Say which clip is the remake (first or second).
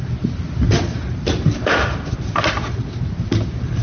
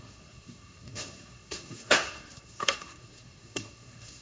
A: second